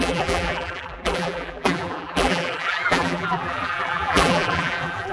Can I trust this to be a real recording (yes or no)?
no